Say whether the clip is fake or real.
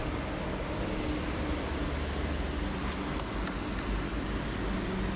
real